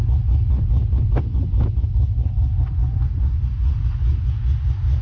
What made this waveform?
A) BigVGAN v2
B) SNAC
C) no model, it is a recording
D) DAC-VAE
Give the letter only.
C